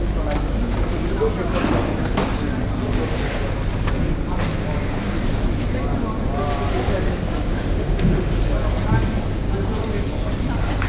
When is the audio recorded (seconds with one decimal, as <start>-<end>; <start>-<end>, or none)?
0.0-7.5; 8.4-10.9